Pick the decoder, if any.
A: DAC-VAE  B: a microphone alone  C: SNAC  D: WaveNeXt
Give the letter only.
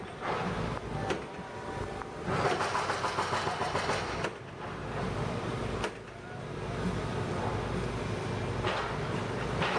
B